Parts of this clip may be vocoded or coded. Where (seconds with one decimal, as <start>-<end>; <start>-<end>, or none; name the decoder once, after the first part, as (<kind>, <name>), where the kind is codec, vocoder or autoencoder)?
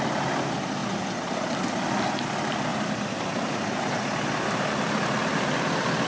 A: none